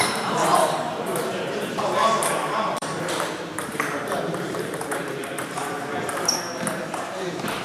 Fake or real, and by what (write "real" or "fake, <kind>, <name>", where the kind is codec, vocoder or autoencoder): fake, vocoder, BigVGAN v2